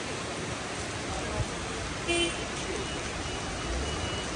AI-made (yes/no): no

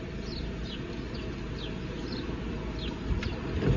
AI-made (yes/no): no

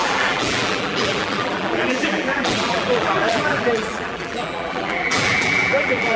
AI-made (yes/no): yes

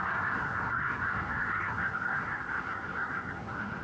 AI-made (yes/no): yes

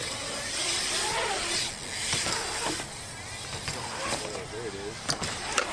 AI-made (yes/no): no